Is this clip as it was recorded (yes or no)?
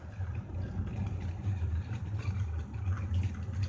yes